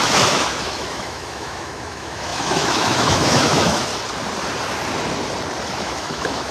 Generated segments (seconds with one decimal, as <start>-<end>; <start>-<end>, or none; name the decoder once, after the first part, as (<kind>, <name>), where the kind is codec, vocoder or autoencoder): 0.0-3.9 (autoencoder, DAC-VAE); 5.7-6.5